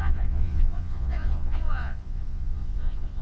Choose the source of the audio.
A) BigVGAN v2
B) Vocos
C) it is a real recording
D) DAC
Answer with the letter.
B